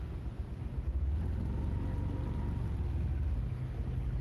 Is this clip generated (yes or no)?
no